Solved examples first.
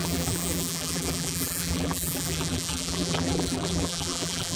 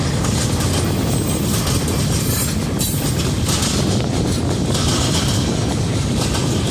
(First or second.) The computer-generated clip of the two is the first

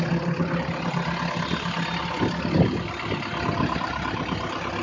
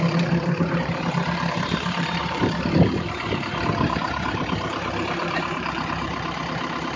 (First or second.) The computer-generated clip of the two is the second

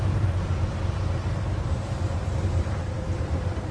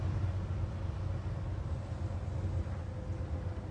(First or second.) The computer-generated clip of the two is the first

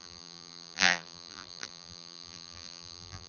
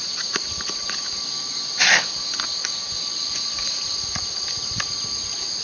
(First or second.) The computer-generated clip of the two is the first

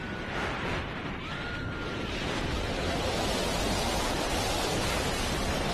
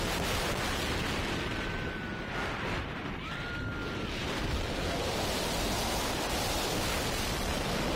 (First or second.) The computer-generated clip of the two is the first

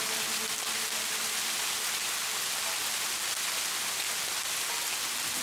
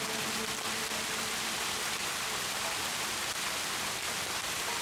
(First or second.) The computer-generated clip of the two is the second